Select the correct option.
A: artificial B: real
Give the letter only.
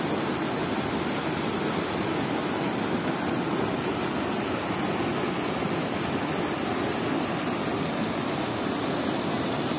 B